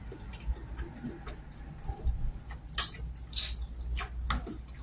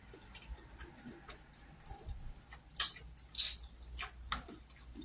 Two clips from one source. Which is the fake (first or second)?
second